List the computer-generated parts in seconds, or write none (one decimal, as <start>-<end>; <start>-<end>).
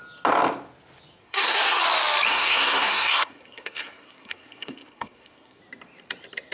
1.2-1.8; 2.3-5.6